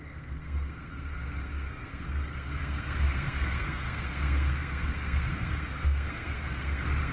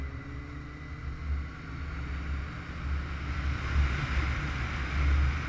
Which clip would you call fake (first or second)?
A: first